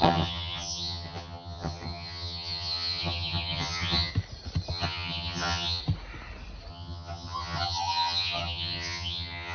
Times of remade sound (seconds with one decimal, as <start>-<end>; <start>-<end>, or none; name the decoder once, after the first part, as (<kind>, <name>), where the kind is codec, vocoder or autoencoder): 0.0-4.1 (vocoder, HiFi-GAN); 4.7-5.8; 6.7-9.5